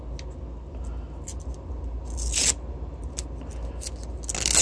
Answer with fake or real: real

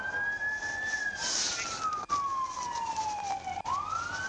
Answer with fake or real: real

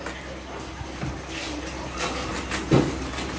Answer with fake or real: real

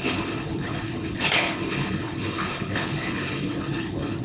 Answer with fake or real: fake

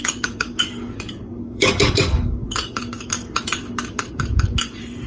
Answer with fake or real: fake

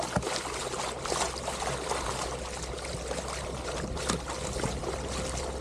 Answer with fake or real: real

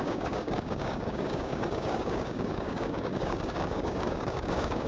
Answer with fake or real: fake